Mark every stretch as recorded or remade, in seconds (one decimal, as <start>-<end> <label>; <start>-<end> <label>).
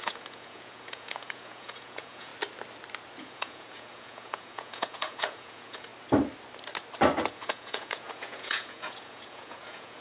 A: 0.0-2.3 remade; 2.3-3.2 recorded; 3.2-5.9 remade; 5.9-7.3 recorded; 7.3-10.0 remade